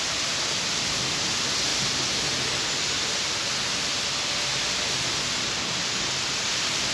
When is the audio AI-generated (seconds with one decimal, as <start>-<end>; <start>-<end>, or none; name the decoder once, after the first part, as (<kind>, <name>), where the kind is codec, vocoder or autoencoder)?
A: none